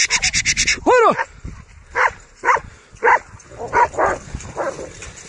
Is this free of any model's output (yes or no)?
yes